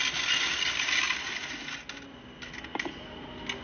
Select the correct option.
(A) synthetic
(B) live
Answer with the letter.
B